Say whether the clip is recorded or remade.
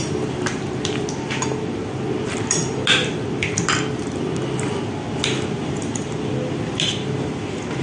recorded